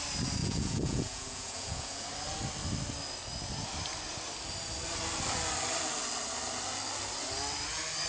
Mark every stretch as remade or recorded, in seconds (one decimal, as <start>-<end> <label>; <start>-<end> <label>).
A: 0.0-0.4 recorded; 0.4-2.1 remade; 2.1-8.1 recorded